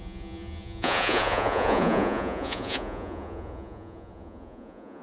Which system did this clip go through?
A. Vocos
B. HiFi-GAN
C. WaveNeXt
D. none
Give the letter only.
A